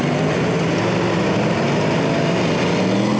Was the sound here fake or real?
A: real